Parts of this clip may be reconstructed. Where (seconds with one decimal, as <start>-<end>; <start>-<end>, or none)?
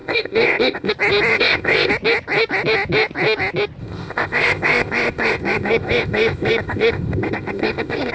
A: 0.0-0.9; 1.3-1.9; 3.8-8.1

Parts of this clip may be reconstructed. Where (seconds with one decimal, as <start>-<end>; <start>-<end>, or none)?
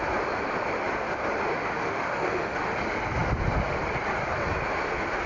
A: 1.5-2.6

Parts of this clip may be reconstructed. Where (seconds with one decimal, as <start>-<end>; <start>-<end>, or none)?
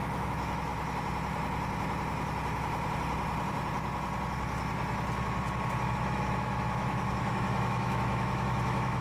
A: 0.0-0.7; 5.9-9.0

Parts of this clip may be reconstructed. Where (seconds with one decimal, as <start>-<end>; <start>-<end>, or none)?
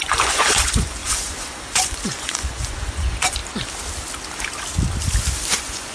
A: 0.0-3.4; 5.5-5.9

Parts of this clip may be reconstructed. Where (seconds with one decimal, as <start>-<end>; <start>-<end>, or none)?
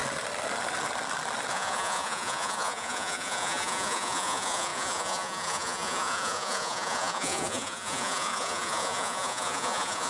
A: 1.5-10.1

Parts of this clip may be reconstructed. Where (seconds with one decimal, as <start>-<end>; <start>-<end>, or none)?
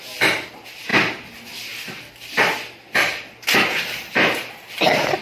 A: 0.0-5.2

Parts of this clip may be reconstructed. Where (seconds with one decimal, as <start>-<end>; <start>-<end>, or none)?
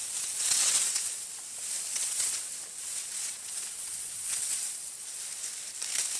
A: 0.0-1.3; 1.9-2.5; 3.0-5.2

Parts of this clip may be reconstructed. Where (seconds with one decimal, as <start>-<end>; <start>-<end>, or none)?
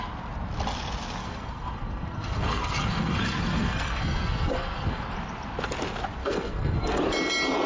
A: 1.2-5.0; 6.2-7.0